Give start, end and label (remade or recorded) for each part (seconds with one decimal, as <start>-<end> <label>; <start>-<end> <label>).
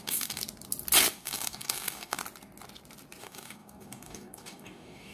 0.0-0.4 remade; 0.4-1.1 recorded; 1.1-2.2 remade; 2.2-3.2 recorded; 3.2-5.1 remade